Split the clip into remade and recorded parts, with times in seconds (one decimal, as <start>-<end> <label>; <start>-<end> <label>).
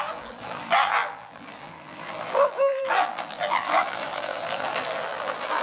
0.0-5.6 remade